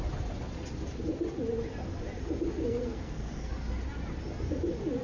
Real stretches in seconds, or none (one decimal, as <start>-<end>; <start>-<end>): 0.0-2.6; 3.5-5.0